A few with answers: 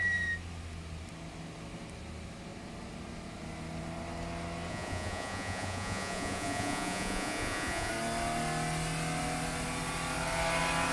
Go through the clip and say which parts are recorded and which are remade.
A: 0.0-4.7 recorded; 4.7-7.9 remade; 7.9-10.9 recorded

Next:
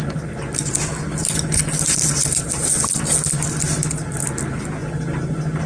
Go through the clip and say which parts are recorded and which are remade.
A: 0.0-5.7 recorded

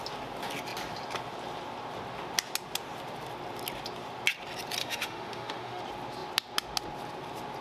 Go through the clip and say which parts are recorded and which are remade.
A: 0.0-4.8 recorded; 4.8-5.8 remade; 5.8-7.6 recorded

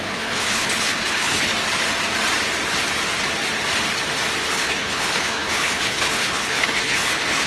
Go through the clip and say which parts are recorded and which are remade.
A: 0.0-1.5 remade; 1.5-4.5 recorded; 4.5-7.5 remade